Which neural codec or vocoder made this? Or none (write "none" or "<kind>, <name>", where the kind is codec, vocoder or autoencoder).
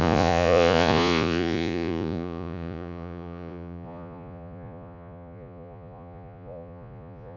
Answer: vocoder, Vocos